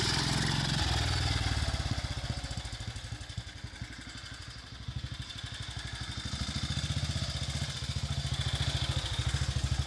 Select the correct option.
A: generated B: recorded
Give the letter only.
B